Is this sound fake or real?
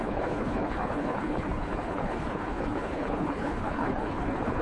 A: fake